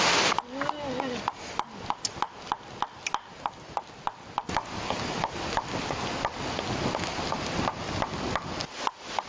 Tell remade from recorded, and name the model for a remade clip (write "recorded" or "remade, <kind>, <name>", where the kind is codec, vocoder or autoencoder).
recorded